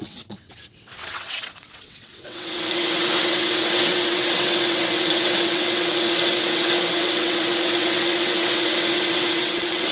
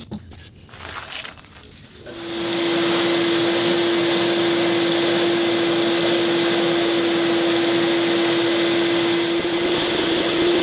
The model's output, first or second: first